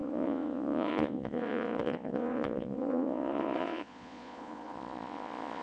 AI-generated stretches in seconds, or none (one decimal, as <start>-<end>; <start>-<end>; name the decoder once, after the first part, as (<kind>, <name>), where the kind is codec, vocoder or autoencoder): 0.0-5.6 (vocoder, Vocos)